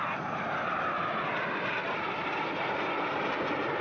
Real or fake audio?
fake